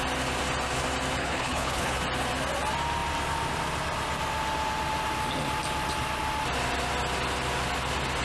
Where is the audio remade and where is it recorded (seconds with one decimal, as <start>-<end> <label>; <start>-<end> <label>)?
0.0-1.2 recorded; 1.2-2.0 remade; 2.0-8.2 recorded